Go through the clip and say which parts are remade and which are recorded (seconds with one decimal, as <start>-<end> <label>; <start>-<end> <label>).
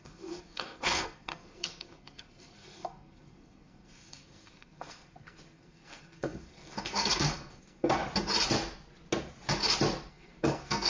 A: 0.0-8.0 remade; 8.0-10.1 recorded; 10.1-10.9 remade